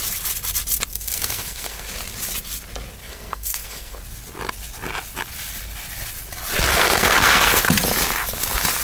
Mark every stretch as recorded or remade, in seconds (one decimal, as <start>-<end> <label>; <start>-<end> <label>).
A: 0.0-0.9 recorded; 0.9-1.9 remade; 1.9-3.0 recorded; 3.0-4.0 remade; 4.0-6.7 recorded; 6.7-7.6 remade; 7.6-8.8 recorded